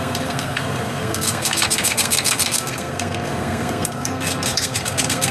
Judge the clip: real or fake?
fake